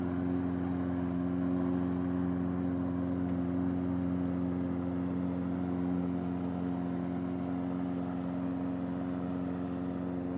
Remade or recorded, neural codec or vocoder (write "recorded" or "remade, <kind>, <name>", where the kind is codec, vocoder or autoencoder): recorded